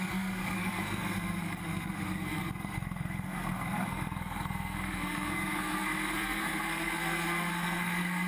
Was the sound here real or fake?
fake